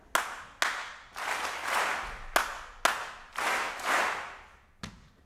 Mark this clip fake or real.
real